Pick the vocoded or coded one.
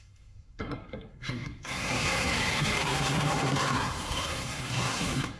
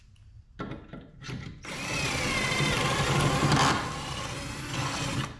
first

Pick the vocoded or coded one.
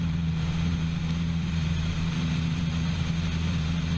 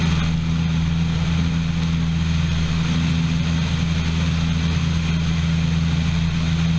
first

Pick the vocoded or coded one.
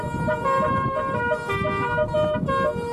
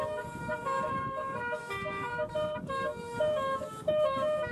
second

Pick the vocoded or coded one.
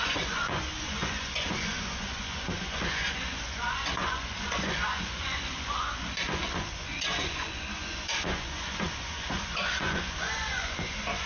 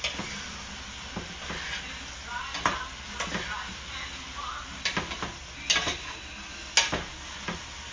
first